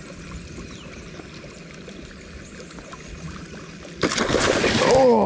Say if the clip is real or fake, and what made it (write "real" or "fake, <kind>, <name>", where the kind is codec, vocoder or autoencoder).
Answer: real